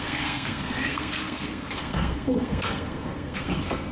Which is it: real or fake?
fake